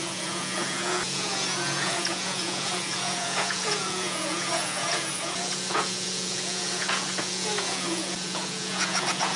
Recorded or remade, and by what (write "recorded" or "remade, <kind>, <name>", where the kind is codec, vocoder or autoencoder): remade, vocoder, Vocos